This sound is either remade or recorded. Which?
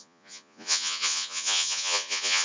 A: remade